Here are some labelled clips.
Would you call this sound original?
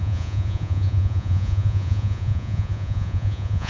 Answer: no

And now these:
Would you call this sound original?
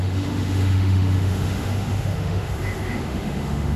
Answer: no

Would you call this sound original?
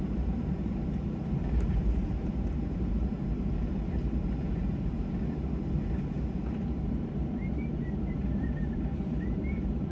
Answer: no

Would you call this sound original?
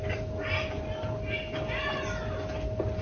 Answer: yes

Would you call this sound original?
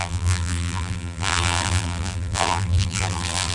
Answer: no